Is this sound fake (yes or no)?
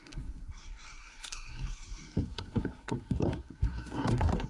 yes